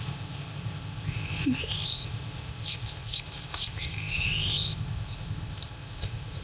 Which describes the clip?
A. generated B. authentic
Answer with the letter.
A